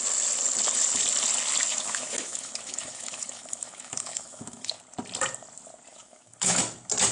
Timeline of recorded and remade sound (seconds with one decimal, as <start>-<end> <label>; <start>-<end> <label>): 0.0-1.7 recorded; 1.7-4.8 remade; 4.8-5.9 recorded; 5.9-6.6 remade; 6.6-7.1 recorded